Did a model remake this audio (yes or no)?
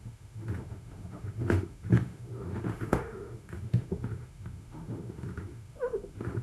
yes